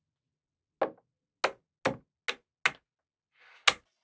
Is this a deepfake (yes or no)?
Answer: no